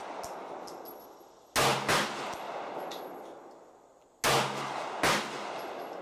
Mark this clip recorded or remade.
recorded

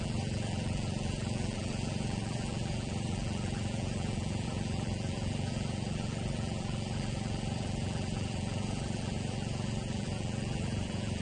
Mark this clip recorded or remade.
remade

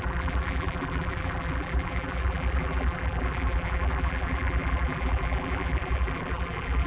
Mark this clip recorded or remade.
remade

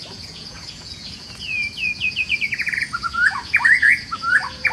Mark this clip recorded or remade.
remade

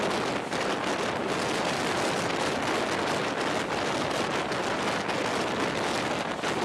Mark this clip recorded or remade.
recorded